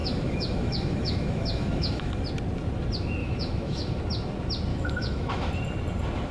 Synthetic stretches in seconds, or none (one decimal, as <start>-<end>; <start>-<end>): 0.0-2.1; 3.2-4.0; 4.7-5.5